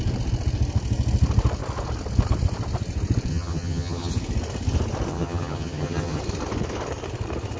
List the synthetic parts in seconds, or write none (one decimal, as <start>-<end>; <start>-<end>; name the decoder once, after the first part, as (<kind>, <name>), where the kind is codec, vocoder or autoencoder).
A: 3.3-4.1 (vocoder, HiFi-GAN); 5.1-6.2